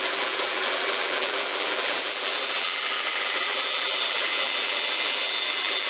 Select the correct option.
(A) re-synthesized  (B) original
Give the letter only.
A